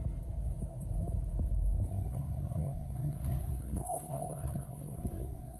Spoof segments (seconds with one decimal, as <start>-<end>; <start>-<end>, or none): 1.9-5.6